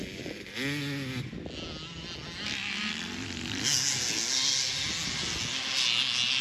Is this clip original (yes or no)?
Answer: yes